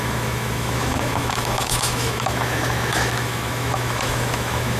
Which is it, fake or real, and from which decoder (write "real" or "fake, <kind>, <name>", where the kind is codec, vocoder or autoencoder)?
fake, autoencoder, DAC-VAE